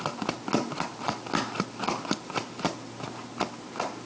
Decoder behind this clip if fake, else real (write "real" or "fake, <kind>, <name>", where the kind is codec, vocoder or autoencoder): real